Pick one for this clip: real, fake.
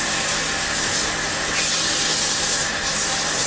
real